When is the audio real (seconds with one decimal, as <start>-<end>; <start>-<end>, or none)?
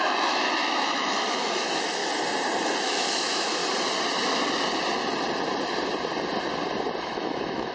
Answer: 2.0-2.8; 3.6-7.0